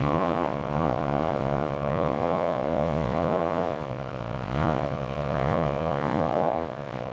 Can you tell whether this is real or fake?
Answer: fake